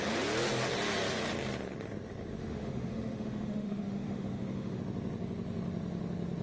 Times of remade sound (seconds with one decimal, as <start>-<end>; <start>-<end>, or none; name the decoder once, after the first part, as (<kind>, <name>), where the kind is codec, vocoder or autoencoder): 2.4-4.8 (autoencoder, DAC-VAE)